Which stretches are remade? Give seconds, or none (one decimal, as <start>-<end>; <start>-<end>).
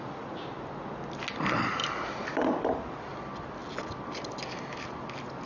1.8-2.5